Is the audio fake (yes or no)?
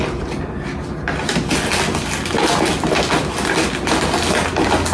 no